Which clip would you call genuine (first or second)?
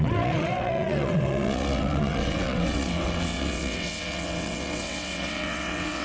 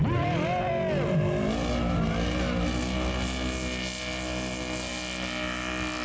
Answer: second